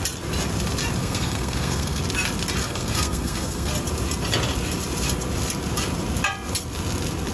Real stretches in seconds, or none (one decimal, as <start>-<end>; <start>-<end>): 0.0-1.0; 2.0-2.6; 3.7-7.3